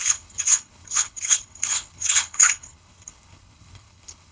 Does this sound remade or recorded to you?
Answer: remade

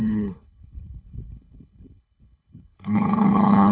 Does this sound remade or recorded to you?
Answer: remade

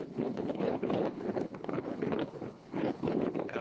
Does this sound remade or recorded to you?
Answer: remade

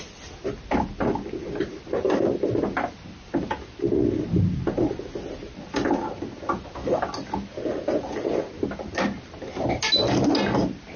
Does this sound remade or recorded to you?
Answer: recorded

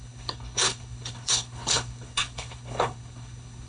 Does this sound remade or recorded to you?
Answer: remade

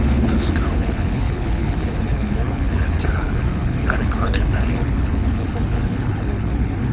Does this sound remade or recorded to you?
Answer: remade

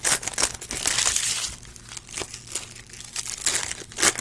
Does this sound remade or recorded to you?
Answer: recorded